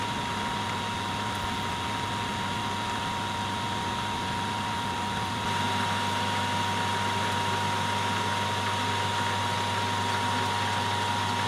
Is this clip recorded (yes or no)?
yes